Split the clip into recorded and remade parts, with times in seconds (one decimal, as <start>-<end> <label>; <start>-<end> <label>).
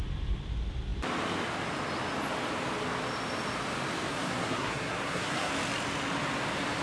0.0-4.1 recorded; 4.1-5.5 remade; 5.5-6.8 recorded